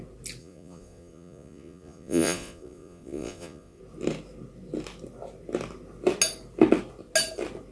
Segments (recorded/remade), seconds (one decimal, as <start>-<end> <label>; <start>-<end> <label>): 0.0-0.4 recorded; 0.4-3.8 remade; 3.8-7.7 recorded